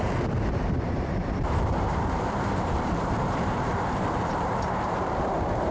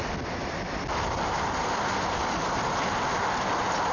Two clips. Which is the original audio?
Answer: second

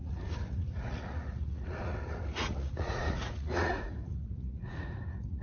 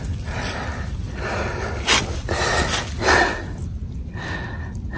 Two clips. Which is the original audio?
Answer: second